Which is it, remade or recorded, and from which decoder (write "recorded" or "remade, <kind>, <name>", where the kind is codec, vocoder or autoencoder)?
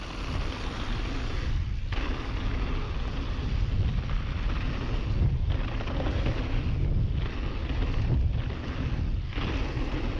recorded